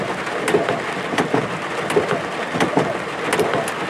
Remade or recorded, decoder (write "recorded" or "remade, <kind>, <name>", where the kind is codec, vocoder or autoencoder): recorded